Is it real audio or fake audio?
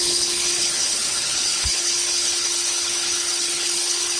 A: fake